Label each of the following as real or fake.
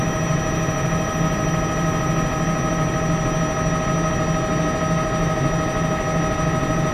real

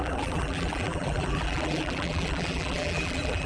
fake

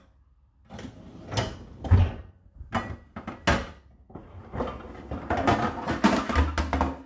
real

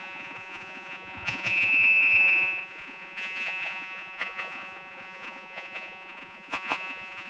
fake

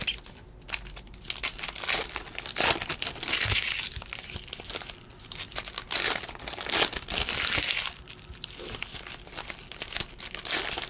real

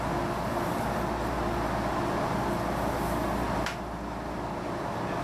real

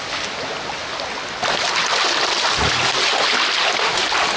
real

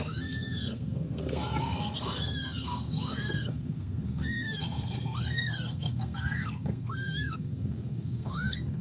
fake